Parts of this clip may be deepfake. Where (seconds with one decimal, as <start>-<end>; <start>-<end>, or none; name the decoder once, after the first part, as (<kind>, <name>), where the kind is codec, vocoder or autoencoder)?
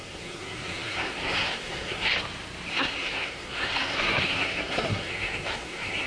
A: 0.0-2.1 (codec, SNAC); 2.7-6.1